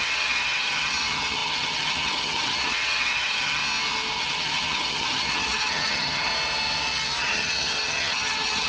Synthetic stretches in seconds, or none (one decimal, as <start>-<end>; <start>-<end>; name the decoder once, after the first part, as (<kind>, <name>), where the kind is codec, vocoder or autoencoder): 0.0-3.6 (vocoder, HiFi-GAN); 4.2-6.3; 7.2-8.7